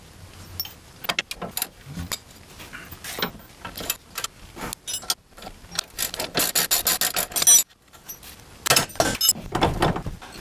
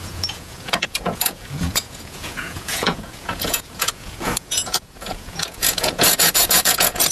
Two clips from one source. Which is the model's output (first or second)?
second